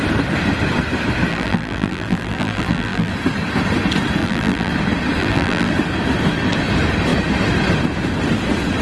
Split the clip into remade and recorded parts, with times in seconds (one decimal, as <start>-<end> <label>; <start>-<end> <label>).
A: 0.0-1.3 recorded; 1.3-3.1 remade; 3.1-4.2 recorded; 4.2-4.7 remade; 4.7-5.2 recorded; 5.2-5.7 remade; 5.7-8.8 recorded